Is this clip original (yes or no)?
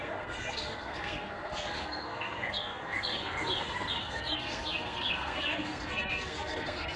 no